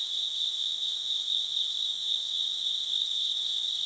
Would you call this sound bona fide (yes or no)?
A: no